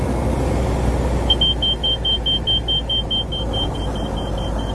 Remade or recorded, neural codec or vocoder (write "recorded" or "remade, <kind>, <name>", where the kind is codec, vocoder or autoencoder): recorded